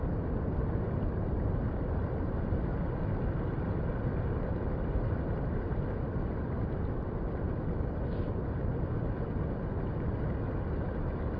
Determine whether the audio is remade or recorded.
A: recorded